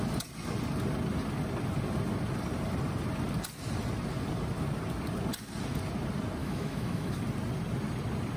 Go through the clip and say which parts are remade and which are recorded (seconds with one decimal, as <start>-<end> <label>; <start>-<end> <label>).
0.0-6.4 recorded; 6.4-7.2 remade; 7.2-8.4 recorded